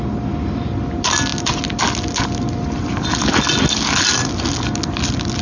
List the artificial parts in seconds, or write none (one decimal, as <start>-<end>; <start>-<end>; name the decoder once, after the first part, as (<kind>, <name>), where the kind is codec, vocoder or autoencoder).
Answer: none